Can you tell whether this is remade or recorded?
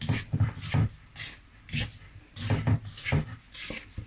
recorded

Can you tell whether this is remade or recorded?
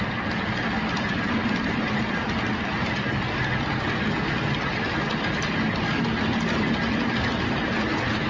recorded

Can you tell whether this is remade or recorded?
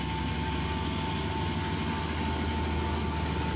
recorded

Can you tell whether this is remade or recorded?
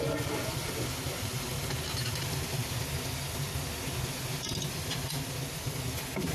recorded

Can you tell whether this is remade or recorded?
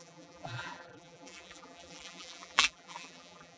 remade